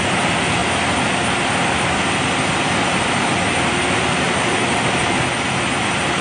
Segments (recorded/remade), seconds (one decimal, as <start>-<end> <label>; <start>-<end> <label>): 0.0-6.2 recorded